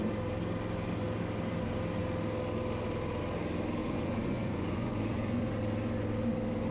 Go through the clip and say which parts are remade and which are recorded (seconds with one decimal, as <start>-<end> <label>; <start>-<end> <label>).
0.0-3.8 recorded; 3.8-5.5 remade; 5.5-6.7 recorded